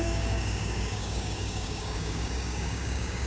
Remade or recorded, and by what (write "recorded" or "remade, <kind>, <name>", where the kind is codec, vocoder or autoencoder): remade, codec, DAC